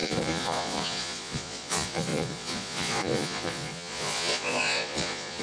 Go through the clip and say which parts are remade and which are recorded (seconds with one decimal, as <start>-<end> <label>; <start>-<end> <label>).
0.0-5.4 remade